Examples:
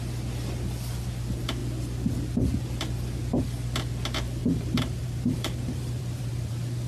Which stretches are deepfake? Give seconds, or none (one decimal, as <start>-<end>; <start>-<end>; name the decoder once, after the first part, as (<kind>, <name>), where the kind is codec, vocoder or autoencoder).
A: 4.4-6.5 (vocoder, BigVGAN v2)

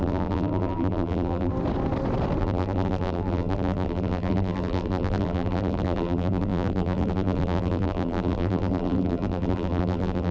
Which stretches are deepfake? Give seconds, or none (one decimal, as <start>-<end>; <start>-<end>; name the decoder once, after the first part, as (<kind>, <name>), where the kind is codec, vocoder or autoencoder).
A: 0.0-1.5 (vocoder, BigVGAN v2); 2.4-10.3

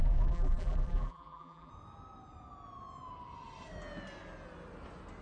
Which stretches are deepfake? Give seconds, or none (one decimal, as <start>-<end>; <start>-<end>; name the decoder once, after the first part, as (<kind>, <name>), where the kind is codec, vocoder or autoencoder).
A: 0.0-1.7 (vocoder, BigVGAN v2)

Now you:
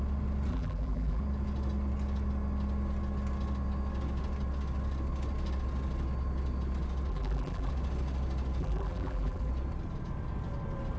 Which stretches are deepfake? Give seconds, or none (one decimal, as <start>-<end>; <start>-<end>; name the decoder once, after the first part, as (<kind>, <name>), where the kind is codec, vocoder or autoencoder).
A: 0.5-1.2 (vocoder, BigVGAN v2); 7.1-7.7; 8.6-9.5

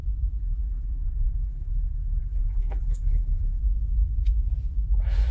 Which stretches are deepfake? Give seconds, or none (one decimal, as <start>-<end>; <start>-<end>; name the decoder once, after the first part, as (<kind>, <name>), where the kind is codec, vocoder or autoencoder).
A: 0.4-3.6 (vocoder, BigVGAN v2)

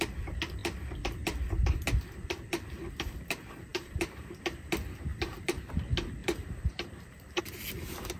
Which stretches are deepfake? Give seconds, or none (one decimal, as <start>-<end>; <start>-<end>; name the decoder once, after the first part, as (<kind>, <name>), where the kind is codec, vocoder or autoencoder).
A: 3.7-4.4 (vocoder, BigVGAN v2); 5.1-5.7; 6.2-7.4

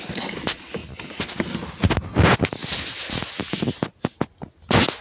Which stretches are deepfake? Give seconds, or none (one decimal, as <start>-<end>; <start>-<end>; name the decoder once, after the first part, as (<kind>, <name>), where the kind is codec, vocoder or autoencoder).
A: none